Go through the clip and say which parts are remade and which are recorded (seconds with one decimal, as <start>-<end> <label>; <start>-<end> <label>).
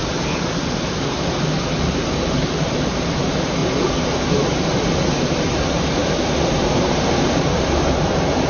0.0-0.7 recorded; 0.7-3.6 remade; 3.6-4.3 recorded; 4.3-6.0 remade; 6.0-6.7 recorded; 6.7-8.5 remade